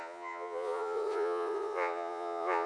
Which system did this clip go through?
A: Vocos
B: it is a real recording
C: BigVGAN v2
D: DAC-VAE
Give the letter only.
A